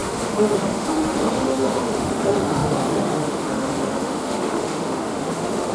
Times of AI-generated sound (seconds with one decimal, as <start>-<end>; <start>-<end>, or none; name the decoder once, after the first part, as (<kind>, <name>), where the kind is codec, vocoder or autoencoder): 0.0-5.7 (autoencoder, DAC-VAE)